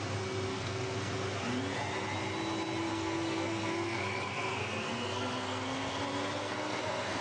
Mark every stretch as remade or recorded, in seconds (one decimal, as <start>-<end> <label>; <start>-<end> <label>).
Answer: 0.0-0.5 recorded; 0.5-1.1 remade; 1.1-2.9 recorded; 2.9-6.0 remade; 6.0-6.4 recorded; 6.4-7.2 remade